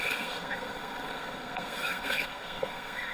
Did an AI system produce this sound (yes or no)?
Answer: yes